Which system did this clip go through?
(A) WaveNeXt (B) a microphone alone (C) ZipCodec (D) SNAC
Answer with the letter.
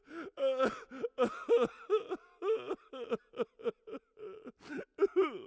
B